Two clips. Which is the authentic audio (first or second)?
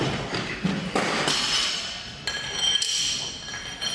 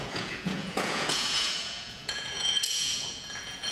first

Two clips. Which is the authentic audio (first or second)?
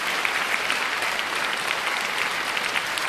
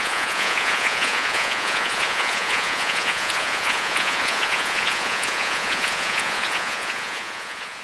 first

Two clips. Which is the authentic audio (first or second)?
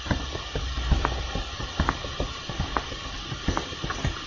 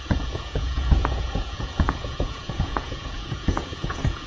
first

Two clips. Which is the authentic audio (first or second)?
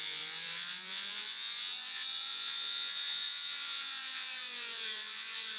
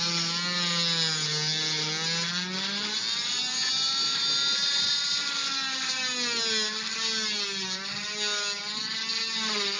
second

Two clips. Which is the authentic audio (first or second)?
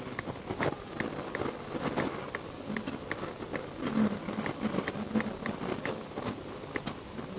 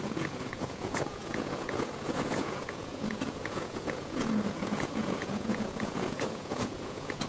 first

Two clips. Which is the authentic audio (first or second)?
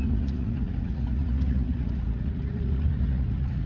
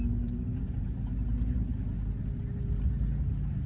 second